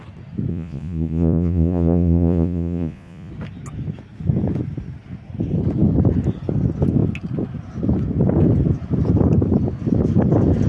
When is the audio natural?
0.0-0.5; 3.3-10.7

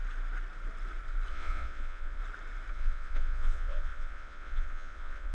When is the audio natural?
0.0-1.3; 2.2-2.7

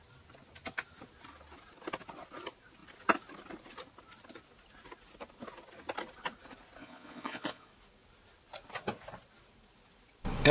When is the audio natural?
0.0-6.8; 7.7-10.5

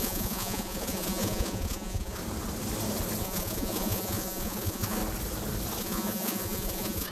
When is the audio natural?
2.2-3.2; 5.0-5.8

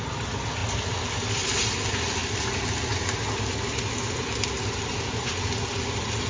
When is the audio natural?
0.0-6.3

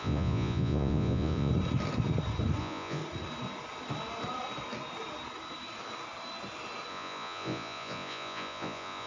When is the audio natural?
1.5-2.6; 3.0-6.9

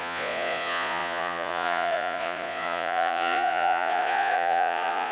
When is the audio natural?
none